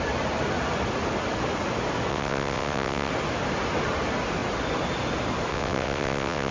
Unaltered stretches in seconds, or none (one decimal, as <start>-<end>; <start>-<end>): 0.0-2.1; 3.1-5.5

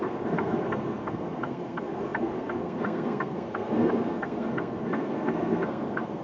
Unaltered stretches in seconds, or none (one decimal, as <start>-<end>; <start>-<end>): none

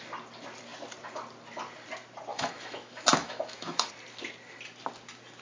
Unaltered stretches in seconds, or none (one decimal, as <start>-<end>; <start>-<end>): 0.0-2.3; 3.9-5.4

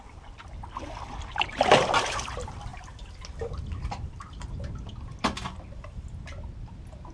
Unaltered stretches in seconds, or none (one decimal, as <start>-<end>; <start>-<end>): 0.0-7.1

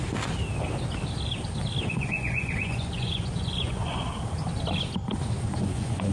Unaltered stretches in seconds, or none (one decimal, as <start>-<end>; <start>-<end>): 0.0-1.9; 4.0-5.5